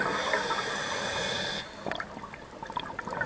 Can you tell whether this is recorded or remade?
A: recorded